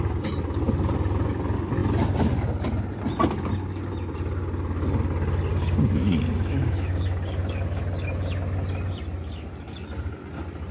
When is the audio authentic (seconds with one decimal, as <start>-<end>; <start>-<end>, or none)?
0.0-5.5; 7.8-10.7